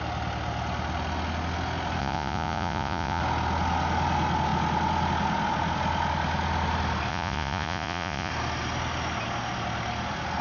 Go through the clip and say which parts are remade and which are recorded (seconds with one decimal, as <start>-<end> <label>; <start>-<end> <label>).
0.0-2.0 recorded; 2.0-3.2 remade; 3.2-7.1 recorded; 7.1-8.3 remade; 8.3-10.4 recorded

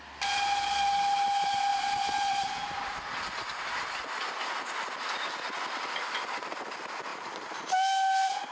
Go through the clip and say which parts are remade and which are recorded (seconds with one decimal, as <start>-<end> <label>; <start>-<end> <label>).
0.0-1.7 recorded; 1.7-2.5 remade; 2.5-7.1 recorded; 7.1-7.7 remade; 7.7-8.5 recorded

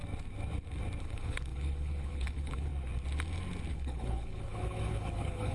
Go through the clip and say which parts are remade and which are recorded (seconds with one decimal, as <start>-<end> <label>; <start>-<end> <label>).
0.0-1.0 recorded; 1.0-2.7 remade; 2.7-3.7 recorded; 3.7-5.5 remade

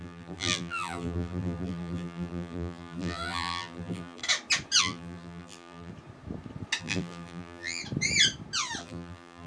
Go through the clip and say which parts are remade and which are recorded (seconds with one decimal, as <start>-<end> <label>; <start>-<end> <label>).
0.0-4.2 remade; 4.2-4.8 recorded; 4.8-5.9 remade; 5.9-6.8 recorded; 6.8-7.8 remade; 7.8-8.8 recorded; 8.8-9.5 remade

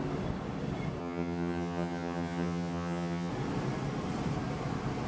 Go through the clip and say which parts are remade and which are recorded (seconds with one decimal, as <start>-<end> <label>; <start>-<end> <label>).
0.0-1.0 recorded; 1.0-3.3 remade; 3.3-5.1 recorded

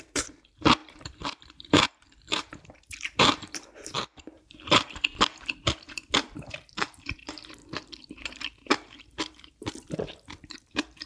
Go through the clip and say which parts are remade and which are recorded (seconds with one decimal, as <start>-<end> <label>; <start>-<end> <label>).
0.0-11.1 remade

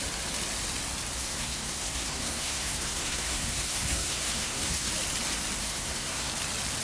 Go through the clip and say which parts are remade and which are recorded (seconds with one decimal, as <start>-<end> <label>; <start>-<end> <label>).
0.0-1.2 recorded; 1.2-4.9 remade; 4.9-5.6 recorded; 5.6-6.3 remade; 6.3-6.8 recorded

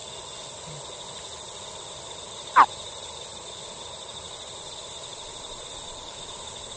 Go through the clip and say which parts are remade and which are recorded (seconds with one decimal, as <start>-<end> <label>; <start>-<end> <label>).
0.0-1.8 recorded; 1.8-6.8 remade